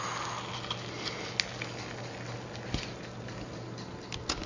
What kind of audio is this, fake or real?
real